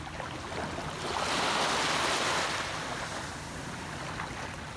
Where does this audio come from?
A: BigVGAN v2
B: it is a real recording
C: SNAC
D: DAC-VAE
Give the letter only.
B